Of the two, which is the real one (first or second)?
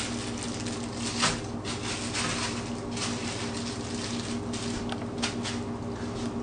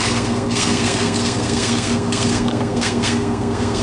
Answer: first